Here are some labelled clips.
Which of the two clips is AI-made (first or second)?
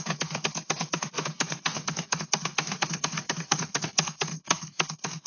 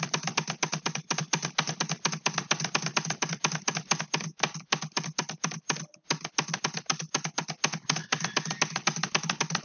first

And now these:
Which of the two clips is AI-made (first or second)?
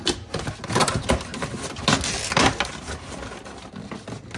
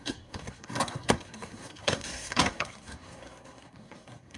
second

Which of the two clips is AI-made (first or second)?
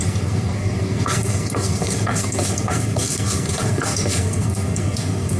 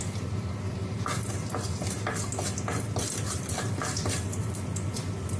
first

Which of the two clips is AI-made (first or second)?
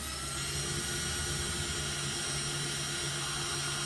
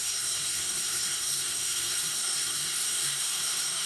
second